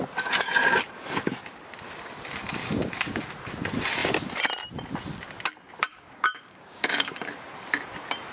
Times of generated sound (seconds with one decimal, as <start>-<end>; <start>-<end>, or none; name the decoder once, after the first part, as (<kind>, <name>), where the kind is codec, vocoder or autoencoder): 2.6-3.2 (codec, DAC); 5.9-7.2